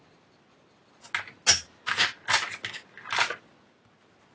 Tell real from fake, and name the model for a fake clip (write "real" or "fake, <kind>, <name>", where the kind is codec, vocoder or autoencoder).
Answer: real